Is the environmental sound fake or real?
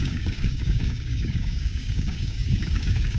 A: fake